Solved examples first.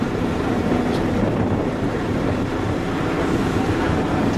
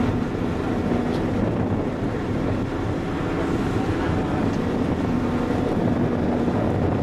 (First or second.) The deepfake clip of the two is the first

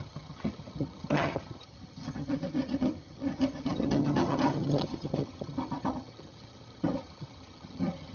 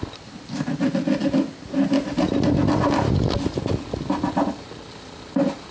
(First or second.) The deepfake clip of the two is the first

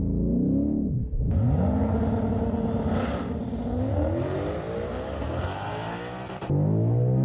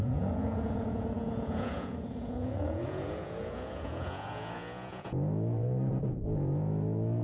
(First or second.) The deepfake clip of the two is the second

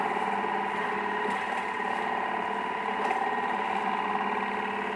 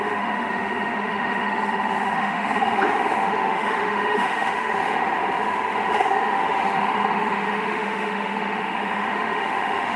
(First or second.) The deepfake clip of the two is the second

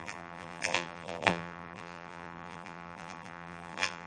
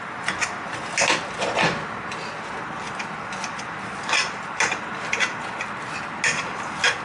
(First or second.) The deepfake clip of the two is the first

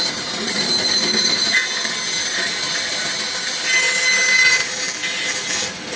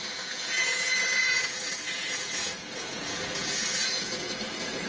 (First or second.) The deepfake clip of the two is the second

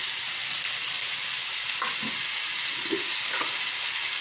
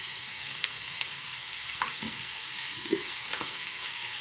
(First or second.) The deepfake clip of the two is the second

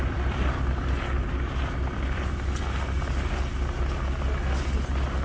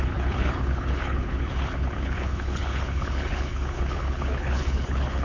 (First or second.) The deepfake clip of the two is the second